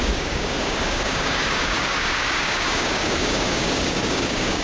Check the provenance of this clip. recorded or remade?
remade